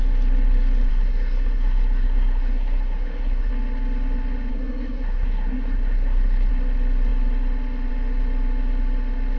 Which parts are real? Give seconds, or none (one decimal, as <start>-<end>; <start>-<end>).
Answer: 0.0-0.9; 3.5-4.5; 6.5-9.4